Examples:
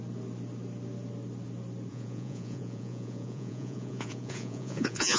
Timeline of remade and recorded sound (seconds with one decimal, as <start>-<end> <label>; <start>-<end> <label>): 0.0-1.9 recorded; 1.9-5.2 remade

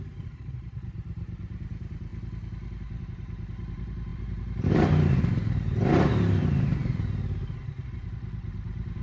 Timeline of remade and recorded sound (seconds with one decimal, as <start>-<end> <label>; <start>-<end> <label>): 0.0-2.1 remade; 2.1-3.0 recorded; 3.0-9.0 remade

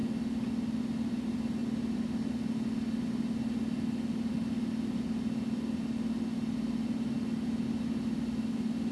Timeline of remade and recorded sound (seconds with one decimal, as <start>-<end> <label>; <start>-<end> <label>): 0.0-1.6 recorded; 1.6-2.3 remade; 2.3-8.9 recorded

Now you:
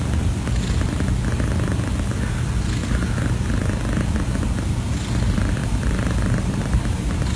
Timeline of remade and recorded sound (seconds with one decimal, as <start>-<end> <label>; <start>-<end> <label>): 0.0-5.6 recorded; 5.6-7.4 remade

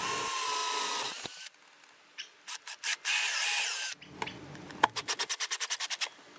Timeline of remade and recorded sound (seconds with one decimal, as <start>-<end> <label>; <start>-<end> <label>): 0.0-6.4 recorded